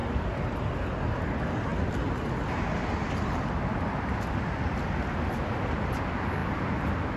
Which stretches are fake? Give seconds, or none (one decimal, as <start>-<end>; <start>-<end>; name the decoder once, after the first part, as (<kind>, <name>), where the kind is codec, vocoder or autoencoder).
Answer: 0.0-0.6 (vocoder, BigVGAN v2); 1.7-2.5